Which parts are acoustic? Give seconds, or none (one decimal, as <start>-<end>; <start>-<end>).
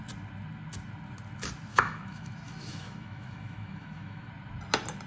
0.0-1.7; 4.3-5.1